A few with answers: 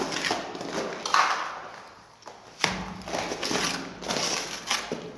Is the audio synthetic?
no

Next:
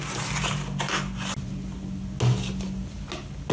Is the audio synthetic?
no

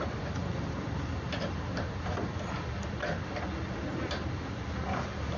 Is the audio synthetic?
no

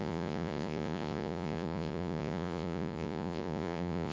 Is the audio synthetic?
yes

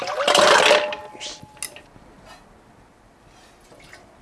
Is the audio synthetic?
no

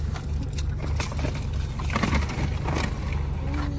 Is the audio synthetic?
no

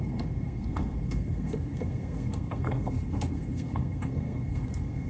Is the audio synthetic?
yes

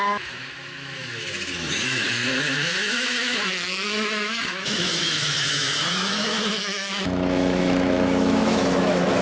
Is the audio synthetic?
yes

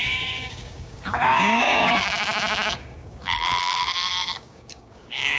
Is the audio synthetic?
yes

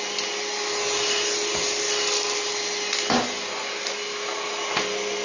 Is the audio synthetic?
no